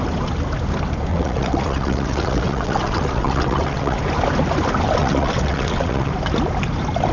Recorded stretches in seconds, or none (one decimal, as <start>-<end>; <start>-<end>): 0.0-1.1; 4.0-5.0; 6.1-7.1